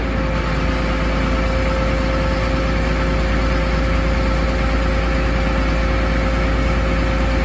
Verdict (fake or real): real